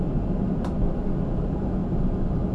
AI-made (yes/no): no